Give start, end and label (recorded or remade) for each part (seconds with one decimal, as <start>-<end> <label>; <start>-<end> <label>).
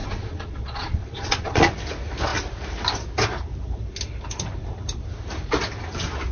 0.0-1.7 remade; 1.7-6.3 recorded